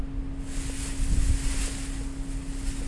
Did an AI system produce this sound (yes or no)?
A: no